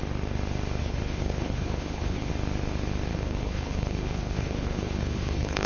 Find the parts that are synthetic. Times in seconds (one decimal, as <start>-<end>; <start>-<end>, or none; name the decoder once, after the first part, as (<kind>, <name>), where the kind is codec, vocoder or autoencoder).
0.8-2.3 (codec, HILCodec); 3.1-5.7

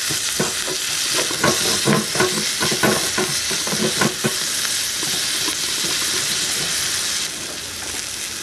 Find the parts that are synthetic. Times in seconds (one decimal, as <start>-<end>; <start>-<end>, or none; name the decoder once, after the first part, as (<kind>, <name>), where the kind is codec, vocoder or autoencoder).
none

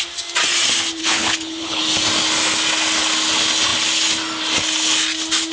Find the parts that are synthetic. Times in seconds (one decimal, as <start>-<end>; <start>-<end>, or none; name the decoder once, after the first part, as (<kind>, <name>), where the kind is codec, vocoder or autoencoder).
1.0-1.8 (codec, HILCodec)

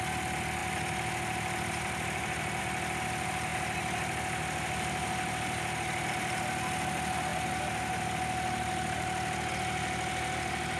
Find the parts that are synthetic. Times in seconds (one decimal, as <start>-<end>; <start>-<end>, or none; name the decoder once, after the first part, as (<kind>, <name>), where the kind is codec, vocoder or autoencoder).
none

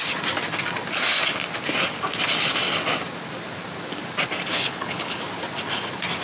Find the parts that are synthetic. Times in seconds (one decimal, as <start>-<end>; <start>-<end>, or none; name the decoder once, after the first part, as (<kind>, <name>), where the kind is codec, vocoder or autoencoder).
4.5-5.2 (codec, HILCodec)

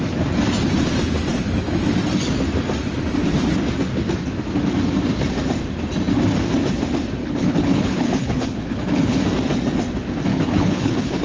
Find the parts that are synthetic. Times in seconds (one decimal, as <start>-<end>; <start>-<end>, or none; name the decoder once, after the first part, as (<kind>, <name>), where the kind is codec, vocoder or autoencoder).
7.2-9.2 (codec, HILCodec); 10.3-11.2

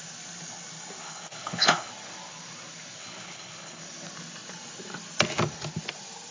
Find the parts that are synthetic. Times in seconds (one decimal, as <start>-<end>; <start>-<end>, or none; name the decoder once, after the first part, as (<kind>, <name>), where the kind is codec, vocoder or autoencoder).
1.0-1.9 (codec, HILCodec); 3.0-3.8